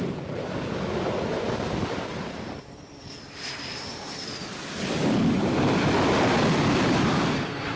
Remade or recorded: remade